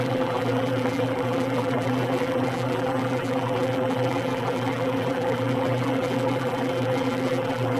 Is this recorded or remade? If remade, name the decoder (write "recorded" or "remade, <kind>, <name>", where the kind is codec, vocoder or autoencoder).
remade, vocoder, BigVGAN v2